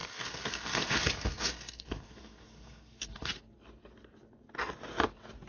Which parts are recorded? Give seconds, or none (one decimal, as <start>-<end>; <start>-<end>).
3.3-5.5